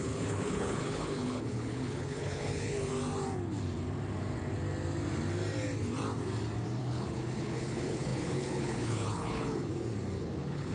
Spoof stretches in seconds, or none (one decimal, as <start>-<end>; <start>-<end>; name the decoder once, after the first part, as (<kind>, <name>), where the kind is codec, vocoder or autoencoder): 0.0-2.9 (codec, HILCodec); 6.8-9.7; 10.2-10.7